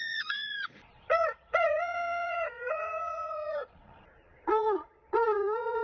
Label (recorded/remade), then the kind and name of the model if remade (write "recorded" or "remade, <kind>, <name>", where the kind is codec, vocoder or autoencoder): remade, vocoder, Vocos